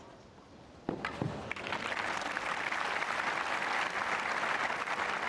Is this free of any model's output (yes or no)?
yes